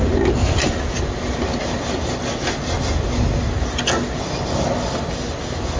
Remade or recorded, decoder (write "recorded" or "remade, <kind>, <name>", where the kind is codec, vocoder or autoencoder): recorded